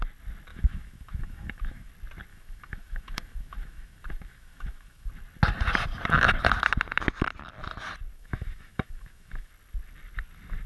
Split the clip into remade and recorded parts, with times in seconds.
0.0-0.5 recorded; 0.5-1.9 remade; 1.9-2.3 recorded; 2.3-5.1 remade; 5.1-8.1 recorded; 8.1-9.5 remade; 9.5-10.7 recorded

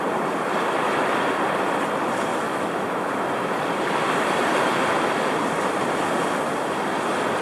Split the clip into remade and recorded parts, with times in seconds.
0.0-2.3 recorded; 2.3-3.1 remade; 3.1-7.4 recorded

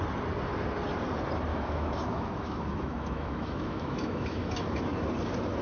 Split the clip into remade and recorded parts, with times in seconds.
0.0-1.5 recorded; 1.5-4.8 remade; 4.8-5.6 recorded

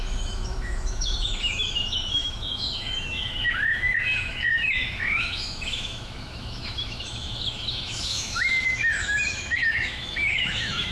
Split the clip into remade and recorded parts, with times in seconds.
0.0-10.9 remade

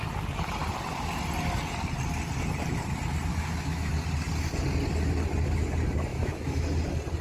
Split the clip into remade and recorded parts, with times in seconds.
0.0-3.3 recorded; 3.3-3.9 remade; 3.9-6.1 recorded; 6.1-6.6 remade; 6.6-7.2 recorded